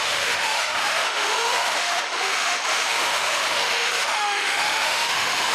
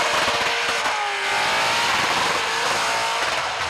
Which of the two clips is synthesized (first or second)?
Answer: first